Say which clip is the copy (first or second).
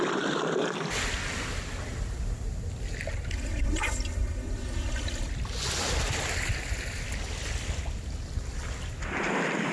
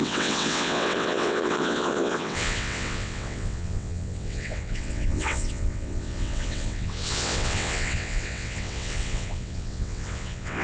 second